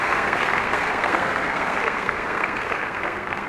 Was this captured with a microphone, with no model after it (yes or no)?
no